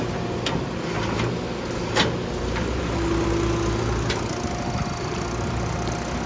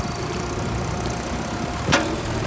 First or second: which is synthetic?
second